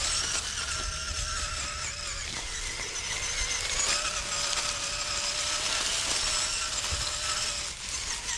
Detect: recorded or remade recorded